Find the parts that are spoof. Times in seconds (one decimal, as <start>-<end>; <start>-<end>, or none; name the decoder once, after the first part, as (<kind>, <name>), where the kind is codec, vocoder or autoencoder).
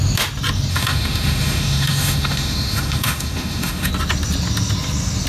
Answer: 0.7-3.9 (autoencoder, DAC-VAE)